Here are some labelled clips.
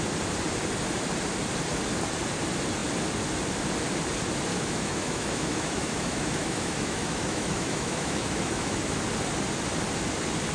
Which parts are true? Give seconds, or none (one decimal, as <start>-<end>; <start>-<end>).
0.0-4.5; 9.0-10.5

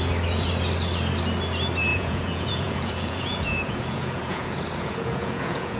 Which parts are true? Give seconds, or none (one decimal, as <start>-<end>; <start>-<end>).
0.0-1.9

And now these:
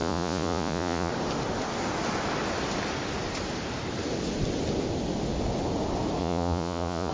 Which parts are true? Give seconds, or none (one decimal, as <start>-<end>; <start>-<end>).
1.1-6.2

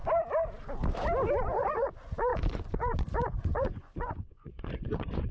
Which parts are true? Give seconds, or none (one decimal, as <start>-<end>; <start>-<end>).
0.0-1.6